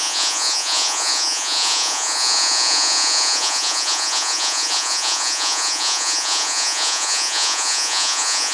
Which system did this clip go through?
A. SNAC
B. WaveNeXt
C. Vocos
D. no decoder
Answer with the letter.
C